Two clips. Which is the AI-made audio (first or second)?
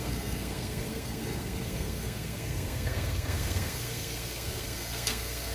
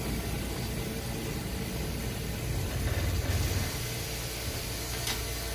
first